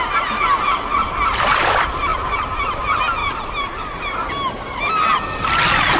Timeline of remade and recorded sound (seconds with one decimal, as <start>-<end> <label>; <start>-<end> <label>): 0.0-2.1 recorded; 2.1-2.8 remade; 2.8-3.2 recorded; 3.2-4.3 remade; 4.3-6.0 recorded